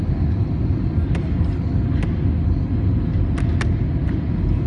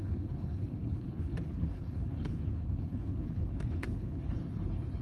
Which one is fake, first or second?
second